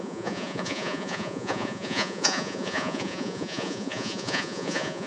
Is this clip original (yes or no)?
no